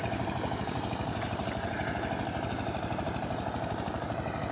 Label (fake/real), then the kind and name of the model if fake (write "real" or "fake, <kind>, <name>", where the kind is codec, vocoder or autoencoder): real